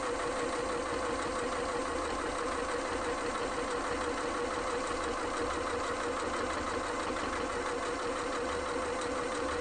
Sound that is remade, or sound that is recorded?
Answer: recorded